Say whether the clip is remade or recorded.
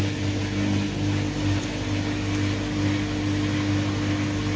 recorded